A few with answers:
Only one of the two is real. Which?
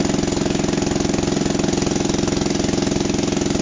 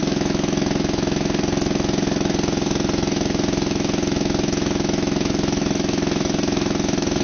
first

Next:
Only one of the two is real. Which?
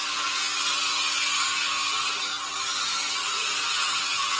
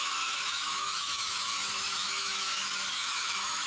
first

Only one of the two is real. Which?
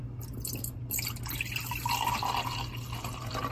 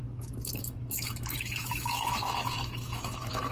first